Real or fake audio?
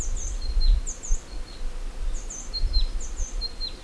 real